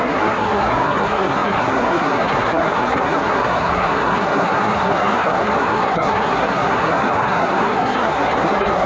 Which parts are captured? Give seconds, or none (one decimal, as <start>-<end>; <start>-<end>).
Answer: none